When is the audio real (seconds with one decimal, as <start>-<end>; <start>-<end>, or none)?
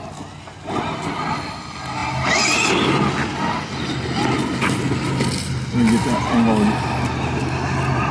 0.0-8.1